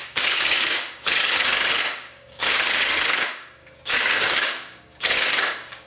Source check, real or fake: fake